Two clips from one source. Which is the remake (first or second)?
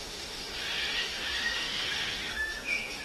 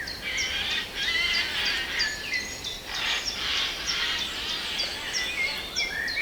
first